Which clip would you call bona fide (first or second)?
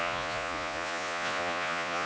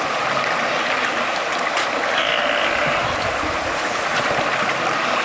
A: second